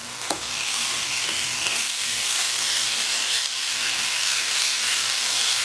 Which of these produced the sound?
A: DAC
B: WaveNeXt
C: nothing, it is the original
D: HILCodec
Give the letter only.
A